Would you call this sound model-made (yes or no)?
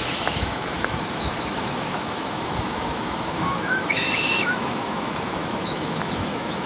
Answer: yes